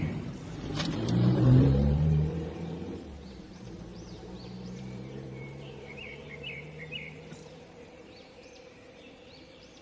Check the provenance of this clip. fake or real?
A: fake